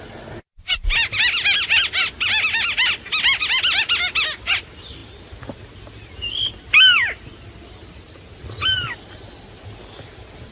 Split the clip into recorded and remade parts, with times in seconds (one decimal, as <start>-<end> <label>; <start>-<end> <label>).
0.0-10.5 recorded